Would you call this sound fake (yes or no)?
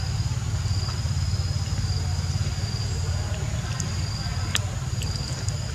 no